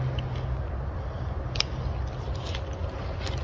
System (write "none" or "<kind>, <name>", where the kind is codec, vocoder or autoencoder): none